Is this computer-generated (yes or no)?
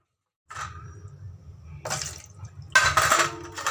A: no